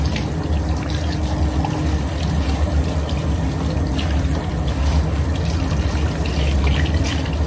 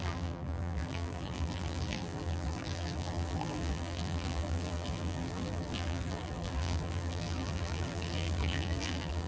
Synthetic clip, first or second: second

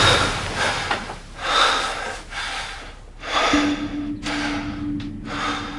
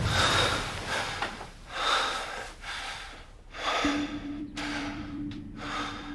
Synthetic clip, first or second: second